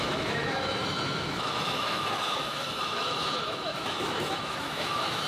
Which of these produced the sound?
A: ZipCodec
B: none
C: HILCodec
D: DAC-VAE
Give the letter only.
D